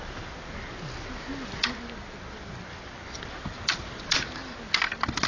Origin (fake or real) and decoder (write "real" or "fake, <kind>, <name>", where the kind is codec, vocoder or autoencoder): real